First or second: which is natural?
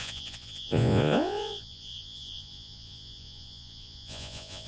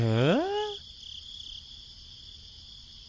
second